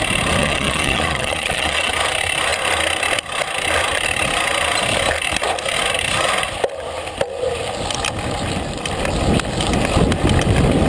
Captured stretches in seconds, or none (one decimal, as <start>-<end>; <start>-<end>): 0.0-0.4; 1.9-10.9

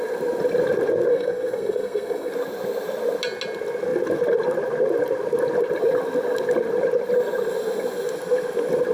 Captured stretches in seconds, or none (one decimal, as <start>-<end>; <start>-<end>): 0.0-1.1; 2.3-8.9

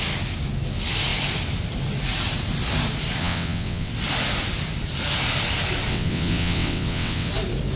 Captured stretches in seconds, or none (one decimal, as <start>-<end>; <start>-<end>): 0.0-3.2; 3.9-5.9; 7.3-7.8

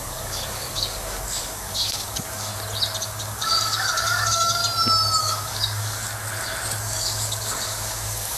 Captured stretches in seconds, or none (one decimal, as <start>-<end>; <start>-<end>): 2.5-3.0; 4.6-5.2; 6.0-6.8

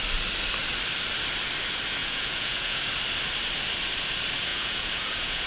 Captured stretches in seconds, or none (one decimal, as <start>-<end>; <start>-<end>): 0.0-2.0; 2.8-4.5